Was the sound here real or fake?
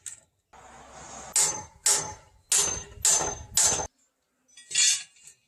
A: real